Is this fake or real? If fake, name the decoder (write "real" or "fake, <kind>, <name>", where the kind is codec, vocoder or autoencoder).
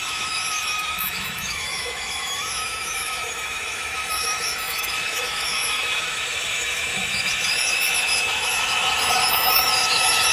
fake, autoencoder, DAC-VAE